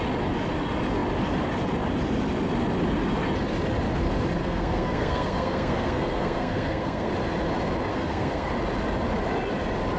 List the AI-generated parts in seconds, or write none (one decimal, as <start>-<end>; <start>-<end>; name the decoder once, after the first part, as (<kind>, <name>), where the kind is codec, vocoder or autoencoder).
4.4-7.1 (codec, SNAC); 7.9-8.5